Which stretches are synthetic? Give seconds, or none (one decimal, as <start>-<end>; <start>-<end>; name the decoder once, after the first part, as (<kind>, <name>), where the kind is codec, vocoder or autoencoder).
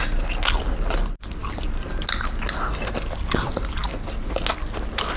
none